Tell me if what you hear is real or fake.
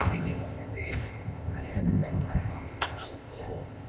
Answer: fake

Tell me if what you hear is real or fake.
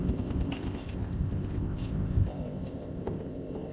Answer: fake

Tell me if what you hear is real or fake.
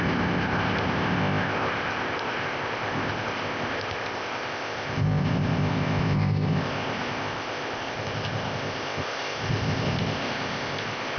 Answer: fake